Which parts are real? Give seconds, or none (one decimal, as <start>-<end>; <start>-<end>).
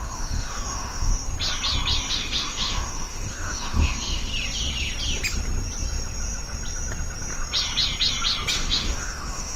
1.1-2.1; 4.3-8.5